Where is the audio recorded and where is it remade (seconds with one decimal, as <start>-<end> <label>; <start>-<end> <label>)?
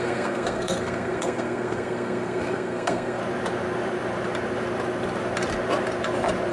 0.0-3.2 remade; 3.2-6.5 recorded